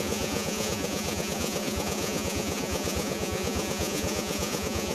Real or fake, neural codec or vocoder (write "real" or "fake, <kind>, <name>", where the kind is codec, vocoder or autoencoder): fake, vocoder, Vocos